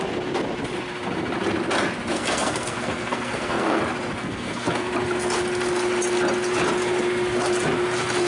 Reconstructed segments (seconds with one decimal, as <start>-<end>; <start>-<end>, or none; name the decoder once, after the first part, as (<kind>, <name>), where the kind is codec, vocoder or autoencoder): 2.1-3.8 (codec, SNAC); 4.2-4.9